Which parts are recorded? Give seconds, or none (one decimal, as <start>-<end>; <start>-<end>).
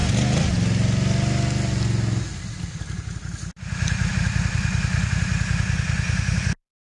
0.0-6.9